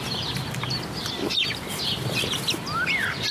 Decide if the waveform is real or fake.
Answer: real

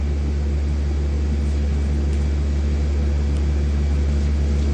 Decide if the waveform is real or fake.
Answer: real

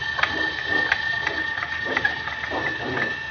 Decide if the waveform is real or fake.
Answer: real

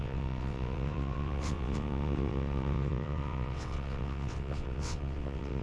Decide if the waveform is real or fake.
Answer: fake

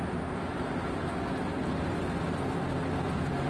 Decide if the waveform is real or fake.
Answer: real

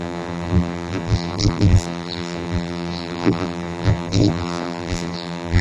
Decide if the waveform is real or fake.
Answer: fake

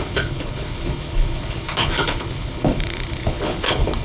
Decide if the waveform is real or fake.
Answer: fake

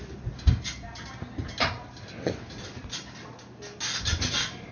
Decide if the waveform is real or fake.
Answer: real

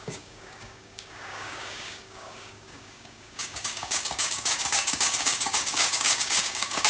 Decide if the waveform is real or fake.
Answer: fake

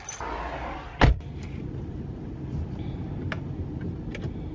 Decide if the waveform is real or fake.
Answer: real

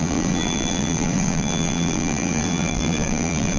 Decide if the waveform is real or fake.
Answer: fake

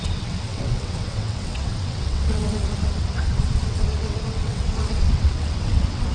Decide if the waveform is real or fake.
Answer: fake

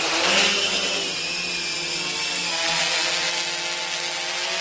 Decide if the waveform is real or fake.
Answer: real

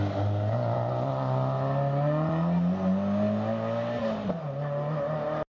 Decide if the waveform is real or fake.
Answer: real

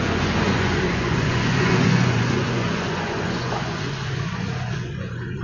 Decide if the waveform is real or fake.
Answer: fake